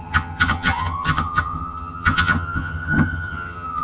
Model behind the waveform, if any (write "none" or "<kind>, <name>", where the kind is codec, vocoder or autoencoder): vocoder, HiFi-GAN